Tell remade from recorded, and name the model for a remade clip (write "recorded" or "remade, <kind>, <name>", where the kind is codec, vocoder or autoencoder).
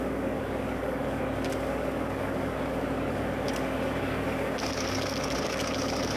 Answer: remade, codec, DAC